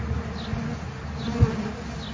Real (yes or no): yes